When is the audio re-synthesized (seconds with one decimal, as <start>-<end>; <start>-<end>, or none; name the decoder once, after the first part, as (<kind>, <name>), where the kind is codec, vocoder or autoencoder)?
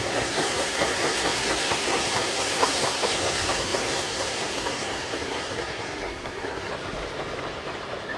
0.0-6.7 (codec, SNAC)